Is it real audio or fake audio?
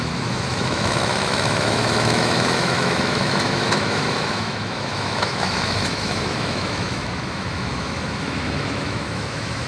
fake